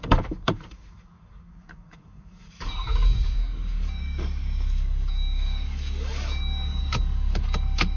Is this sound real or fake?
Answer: fake